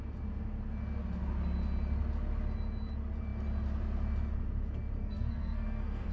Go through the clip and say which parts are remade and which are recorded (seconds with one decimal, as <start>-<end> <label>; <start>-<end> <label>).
0.0-5.0 recorded; 5.0-6.1 remade